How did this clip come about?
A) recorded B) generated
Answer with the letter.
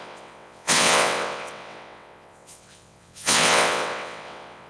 B